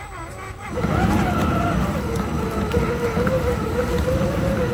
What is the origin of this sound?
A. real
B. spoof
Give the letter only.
A